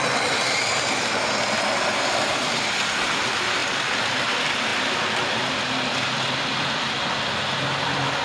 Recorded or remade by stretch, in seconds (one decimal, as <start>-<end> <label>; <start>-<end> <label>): 0.0-8.2 recorded